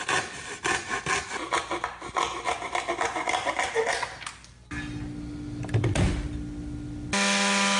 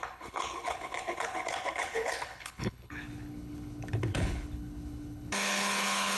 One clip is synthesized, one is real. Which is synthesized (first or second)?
second